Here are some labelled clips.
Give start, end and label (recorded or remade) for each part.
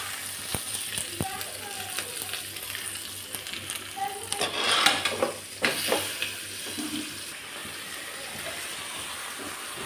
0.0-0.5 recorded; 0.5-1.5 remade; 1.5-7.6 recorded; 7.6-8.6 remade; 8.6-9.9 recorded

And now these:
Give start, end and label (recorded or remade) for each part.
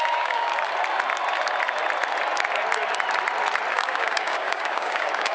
0.0-0.5 remade; 0.5-3.7 recorded; 3.7-5.3 remade